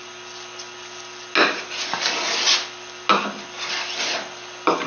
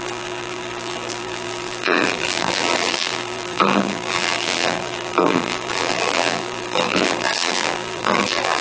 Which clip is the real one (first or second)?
first